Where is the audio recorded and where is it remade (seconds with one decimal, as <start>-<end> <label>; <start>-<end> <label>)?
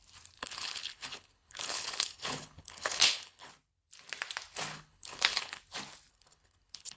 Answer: 0.0-0.4 recorded; 0.4-3.5 remade; 3.5-4.7 recorded; 4.7-5.6 remade; 5.6-6.1 recorded; 6.1-7.0 remade